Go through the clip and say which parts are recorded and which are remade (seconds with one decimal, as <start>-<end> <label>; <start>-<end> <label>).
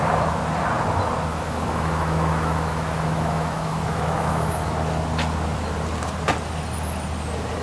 0.0-1.3 recorded; 1.3-4.7 remade; 4.7-7.6 recorded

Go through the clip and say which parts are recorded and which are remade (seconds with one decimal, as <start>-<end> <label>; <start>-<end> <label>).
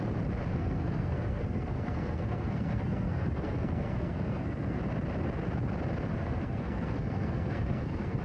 0.0-0.5 recorded; 0.5-4.8 remade; 4.8-6.1 recorded; 6.1-8.2 remade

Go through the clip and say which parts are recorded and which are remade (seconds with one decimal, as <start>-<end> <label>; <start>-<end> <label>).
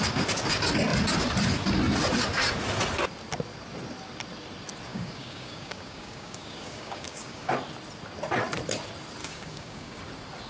0.0-4.9 recorded; 4.9-7.5 remade; 7.5-9.2 recorded; 9.2-10.0 remade; 10.0-10.5 recorded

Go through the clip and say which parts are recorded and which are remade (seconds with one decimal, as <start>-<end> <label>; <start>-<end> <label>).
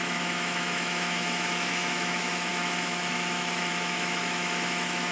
0.0-5.1 remade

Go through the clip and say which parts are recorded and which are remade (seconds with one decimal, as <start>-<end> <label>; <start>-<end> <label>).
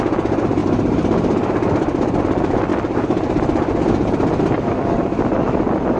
0.0-0.6 recorded; 0.6-2.2 remade; 2.2-6.0 recorded